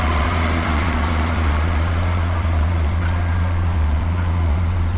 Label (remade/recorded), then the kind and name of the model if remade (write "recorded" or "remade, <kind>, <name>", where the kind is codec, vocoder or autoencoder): remade, vocoder, Vocos